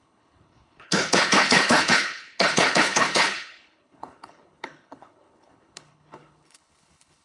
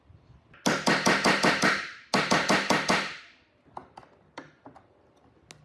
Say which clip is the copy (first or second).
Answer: first